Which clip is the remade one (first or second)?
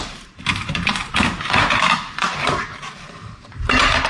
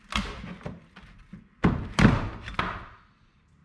first